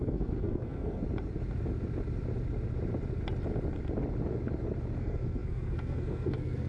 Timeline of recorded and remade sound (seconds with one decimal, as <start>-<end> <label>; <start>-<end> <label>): 0.0-1.0 remade; 1.0-5.0 recorded; 5.0-6.7 remade